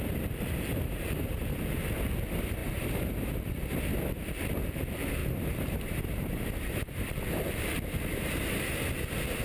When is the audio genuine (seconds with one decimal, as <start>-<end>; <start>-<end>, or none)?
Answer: 0.0-0.7; 1.6-2.6; 3.7-5.2; 8.7-9.4